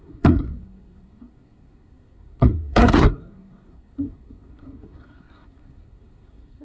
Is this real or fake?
fake